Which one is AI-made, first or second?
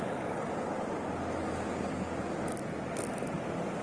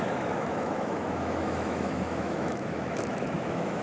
second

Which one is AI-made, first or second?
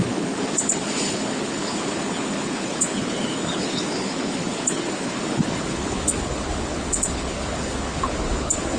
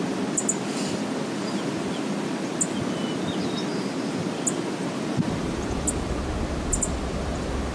first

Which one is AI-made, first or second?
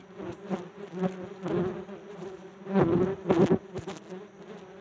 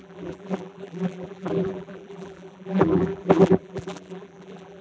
second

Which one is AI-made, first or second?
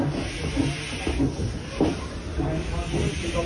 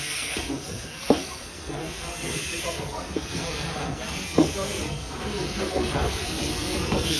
second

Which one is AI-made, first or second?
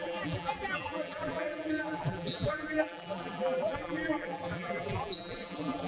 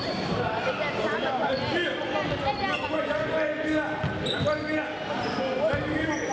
first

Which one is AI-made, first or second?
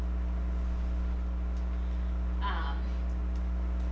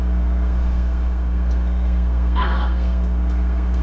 second